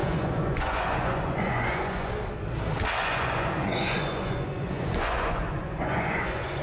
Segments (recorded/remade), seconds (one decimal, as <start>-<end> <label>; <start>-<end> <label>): 0.0-2.1 remade; 2.1-3.0 recorded; 3.0-6.6 remade